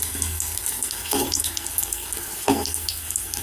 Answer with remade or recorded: remade